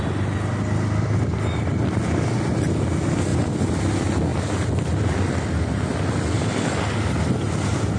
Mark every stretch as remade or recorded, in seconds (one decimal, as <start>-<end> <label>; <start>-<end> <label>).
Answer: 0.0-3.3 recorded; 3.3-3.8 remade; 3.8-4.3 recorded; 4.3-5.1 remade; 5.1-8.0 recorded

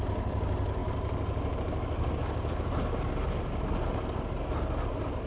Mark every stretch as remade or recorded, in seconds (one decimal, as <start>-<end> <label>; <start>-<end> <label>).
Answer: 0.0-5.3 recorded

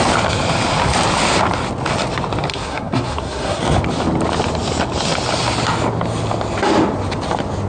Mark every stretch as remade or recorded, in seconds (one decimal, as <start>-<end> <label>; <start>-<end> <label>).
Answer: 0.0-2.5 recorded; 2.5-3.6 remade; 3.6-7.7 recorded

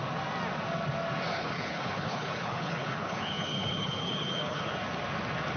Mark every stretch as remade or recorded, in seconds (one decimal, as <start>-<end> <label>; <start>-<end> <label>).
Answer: 0.0-1.3 recorded; 1.3-4.7 remade; 4.7-5.6 recorded

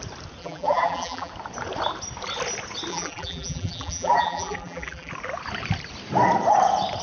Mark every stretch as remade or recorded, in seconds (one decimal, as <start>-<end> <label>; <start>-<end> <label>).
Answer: 0.0-0.4 recorded; 0.4-1.3 remade; 1.3-2.9 recorded; 2.9-5.1 remade; 5.1-7.0 recorded